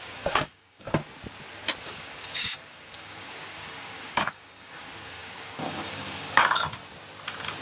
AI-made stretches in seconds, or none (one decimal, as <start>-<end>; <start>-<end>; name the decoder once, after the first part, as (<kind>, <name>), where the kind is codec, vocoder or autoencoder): 0.0-1.0 (codec, DAC); 1.8-6.8